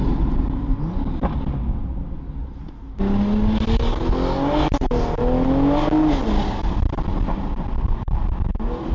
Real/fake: real